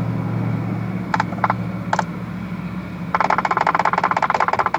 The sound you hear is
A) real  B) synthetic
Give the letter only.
A